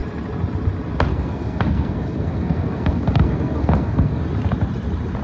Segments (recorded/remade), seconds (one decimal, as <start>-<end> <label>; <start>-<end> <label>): 0.0-1.1 recorded; 1.1-4.2 remade; 4.2-5.2 recorded